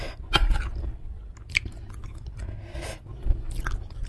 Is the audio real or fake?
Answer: real